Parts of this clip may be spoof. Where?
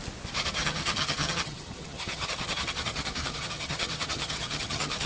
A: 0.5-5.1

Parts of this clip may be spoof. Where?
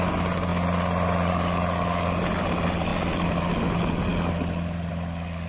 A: none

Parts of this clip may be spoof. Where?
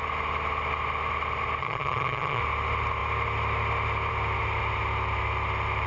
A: 1.6-2.4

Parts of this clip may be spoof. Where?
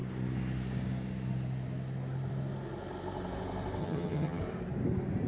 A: 3.8-4.4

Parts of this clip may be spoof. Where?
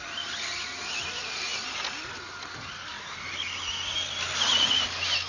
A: none